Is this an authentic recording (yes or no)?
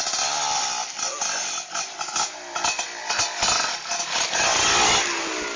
yes